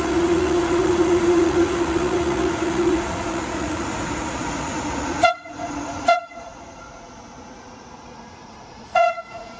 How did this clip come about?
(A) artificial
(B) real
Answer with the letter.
A